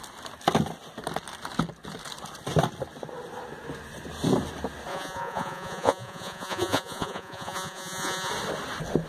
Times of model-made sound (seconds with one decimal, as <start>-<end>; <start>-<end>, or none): 4.9-8.3